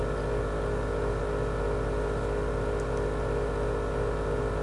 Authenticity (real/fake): real